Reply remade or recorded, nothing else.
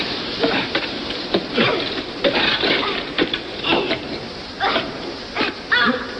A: remade